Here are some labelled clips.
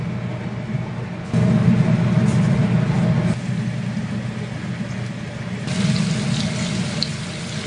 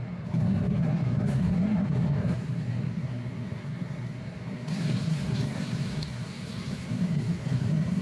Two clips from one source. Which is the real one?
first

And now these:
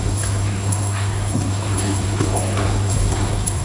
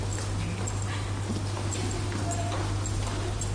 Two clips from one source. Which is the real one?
second